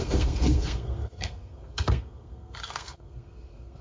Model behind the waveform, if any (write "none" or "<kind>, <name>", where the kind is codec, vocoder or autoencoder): codec, SNAC